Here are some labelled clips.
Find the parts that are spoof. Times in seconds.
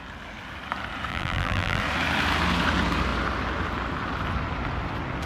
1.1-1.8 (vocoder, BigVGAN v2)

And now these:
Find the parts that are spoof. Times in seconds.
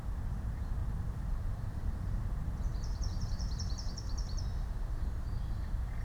0.8-4.4 (vocoder, BigVGAN v2)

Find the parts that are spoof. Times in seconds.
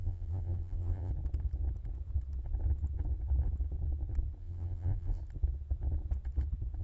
0.0-1.1 (vocoder, BigVGAN v2); 4.4-5.2